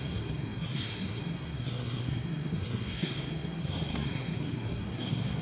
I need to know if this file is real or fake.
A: fake